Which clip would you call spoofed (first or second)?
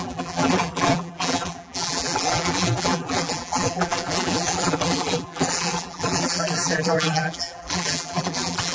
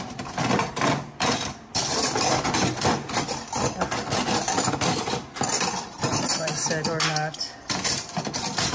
first